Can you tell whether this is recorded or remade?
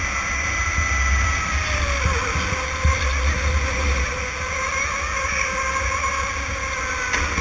recorded